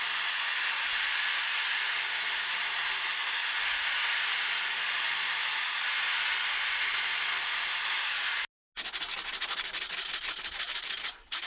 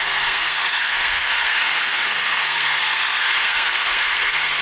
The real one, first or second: first